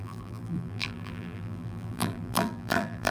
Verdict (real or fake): fake